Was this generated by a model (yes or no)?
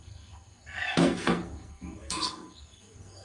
yes